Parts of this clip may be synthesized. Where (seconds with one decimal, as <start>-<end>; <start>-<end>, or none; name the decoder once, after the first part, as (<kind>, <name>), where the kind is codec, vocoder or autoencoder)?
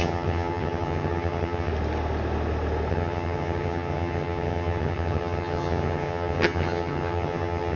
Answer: 0.0-1.7 (vocoder, HiFi-GAN); 2.9-7.8